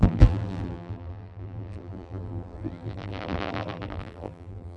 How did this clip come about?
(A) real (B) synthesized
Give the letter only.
B